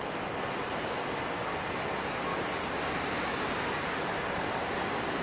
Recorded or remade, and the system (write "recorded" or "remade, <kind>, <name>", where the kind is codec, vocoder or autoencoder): recorded